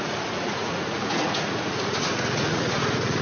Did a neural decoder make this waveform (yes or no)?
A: yes